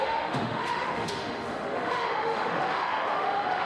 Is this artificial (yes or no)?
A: yes